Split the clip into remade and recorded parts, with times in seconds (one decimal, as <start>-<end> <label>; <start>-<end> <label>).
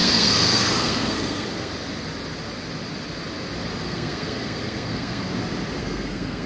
0.0-1.7 remade; 1.7-3.8 recorded; 3.8-5.3 remade; 5.3-5.8 recorded; 5.8-6.5 remade